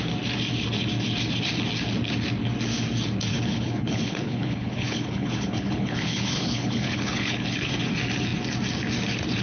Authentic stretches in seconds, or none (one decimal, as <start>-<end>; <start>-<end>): 0.0-3.3; 7.7-9.4